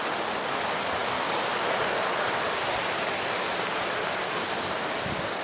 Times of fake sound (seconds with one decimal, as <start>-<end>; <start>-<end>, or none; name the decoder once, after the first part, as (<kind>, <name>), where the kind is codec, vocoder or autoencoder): none